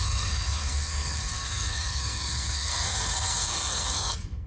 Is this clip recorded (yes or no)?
no